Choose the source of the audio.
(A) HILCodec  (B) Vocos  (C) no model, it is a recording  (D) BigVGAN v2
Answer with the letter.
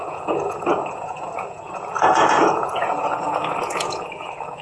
B